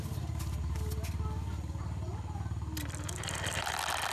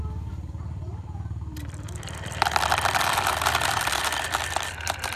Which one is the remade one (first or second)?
second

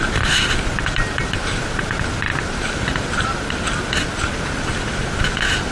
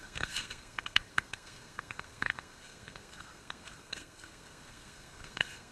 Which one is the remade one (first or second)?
second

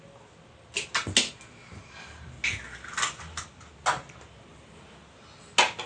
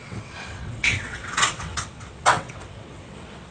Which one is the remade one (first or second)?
second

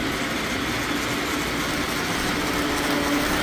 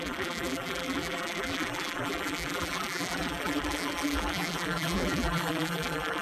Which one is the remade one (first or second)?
second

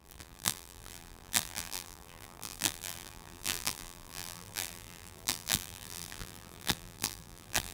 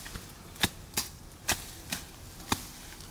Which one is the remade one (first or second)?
first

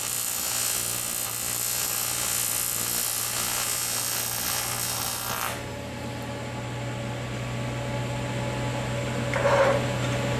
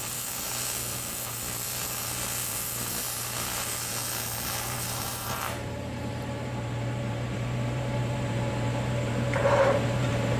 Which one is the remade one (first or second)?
second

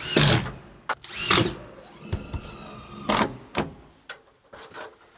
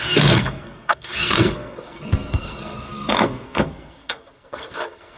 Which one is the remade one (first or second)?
second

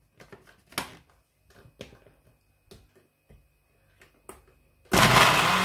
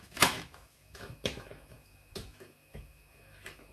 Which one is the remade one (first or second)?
second